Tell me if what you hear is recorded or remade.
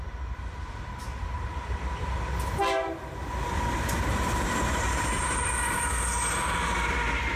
recorded